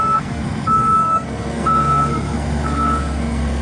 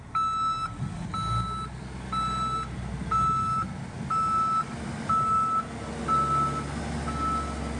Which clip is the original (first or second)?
second